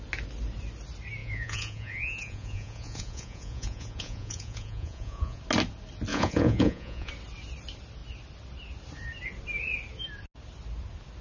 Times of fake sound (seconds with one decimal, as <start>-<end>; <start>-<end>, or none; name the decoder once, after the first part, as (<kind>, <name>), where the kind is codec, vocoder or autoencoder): 1.2-5.4 (vocoder, Vocos); 6.1-7.1